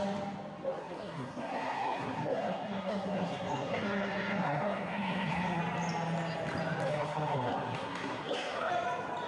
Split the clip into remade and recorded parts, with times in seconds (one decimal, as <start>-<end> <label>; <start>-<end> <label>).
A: 0.0-0.8 recorded; 0.8-5.6 remade; 5.6-6.9 recorded; 6.9-8.7 remade; 8.7-9.3 recorded

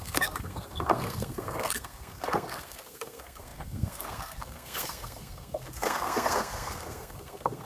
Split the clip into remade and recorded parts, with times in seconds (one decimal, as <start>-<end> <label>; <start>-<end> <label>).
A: 0.0-7.7 remade

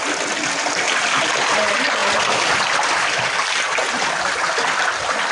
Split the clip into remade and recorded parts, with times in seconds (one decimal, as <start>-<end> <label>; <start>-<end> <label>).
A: 0.0-5.3 recorded